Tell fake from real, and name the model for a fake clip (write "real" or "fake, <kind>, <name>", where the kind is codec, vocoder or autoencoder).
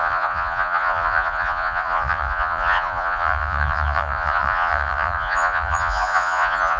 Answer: fake, vocoder, Vocos